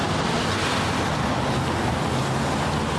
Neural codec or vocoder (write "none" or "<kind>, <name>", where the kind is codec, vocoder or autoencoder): none